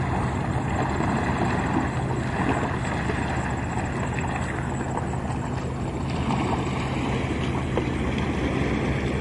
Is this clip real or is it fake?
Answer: real